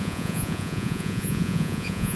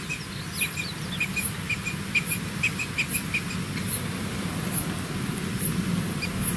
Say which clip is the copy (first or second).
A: first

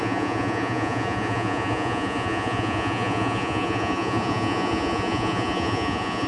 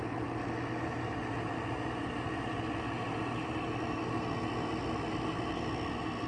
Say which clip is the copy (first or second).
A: first